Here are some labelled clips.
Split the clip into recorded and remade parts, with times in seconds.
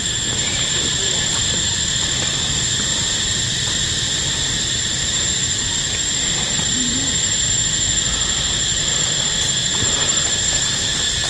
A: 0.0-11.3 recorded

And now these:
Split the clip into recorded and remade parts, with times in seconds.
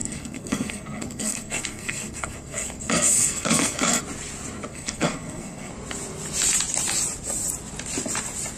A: 0.0-4.0 remade; 4.0-4.7 recorded; 4.7-5.7 remade; 5.7-8.6 recorded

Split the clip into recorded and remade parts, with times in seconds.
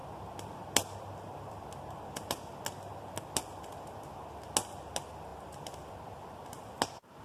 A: 0.0-7.2 recorded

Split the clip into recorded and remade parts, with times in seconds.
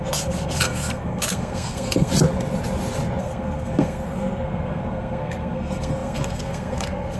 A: 0.0-2.1 remade; 2.1-3.2 recorded; 3.2-7.2 remade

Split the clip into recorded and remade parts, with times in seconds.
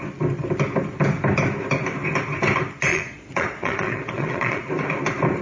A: 0.0-2.9 recorded; 2.9-4.7 remade; 4.7-5.4 recorded